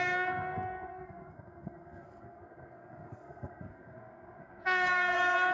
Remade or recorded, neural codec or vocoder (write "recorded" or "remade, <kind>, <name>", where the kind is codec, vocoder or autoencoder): remade, codec, SNAC